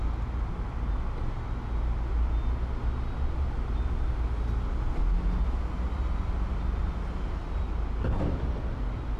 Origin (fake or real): real